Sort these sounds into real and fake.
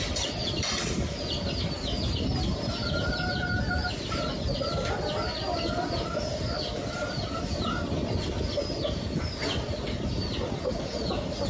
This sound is real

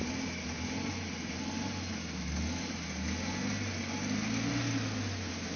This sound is real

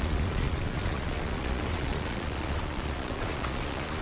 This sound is fake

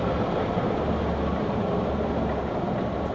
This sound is real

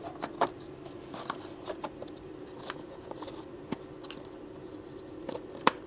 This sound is real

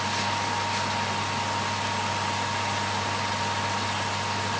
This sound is real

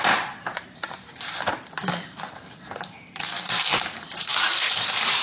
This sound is fake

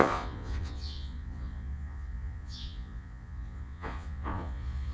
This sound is fake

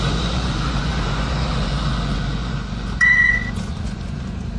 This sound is fake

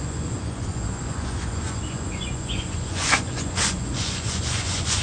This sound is fake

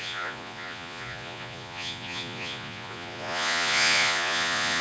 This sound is fake